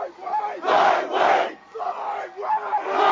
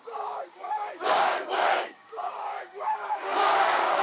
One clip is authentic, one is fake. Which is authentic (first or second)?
first